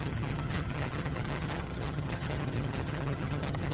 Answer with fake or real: fake